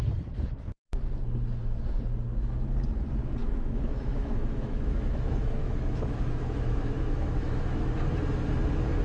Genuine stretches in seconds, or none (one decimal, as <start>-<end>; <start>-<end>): 0.0-3.4; 7.9-9.0